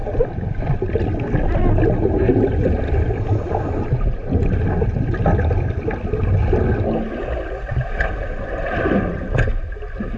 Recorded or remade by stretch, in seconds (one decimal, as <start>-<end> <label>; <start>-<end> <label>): 0.0-10.2 recorded

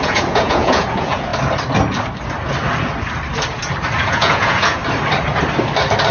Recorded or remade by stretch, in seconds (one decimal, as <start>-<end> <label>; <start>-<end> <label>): 0.0-1.3 remade; 1.3-4.1 recorded; 4.1-4.8 remade; 4.8-6.1 recorded